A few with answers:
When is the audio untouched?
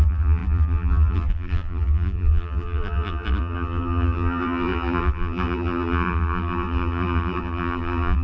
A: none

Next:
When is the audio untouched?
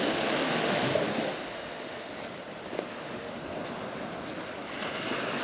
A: 0.9-1.5; 2.1-2.9; 3.3-5.4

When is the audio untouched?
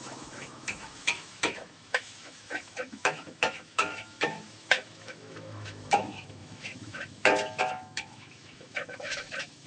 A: none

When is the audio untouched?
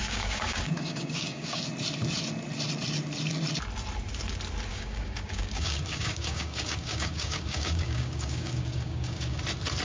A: 1.6-4.7; 9.4-9.8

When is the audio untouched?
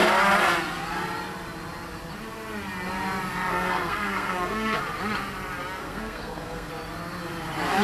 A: 0.0-3.5; 4.8-5.8; 6.7-7.8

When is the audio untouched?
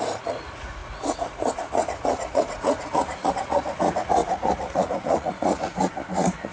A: none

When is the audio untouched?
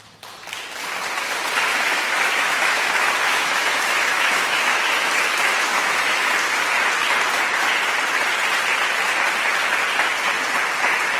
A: 0.0-1.7; 5.1-5.5; 6.3-11.2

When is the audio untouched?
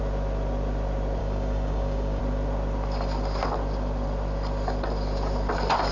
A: 0.0-1.2; 2.2-5.9